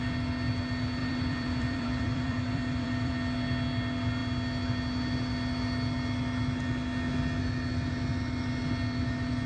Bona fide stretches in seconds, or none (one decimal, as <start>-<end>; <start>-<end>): 0.0-1.0; 3.1-9.5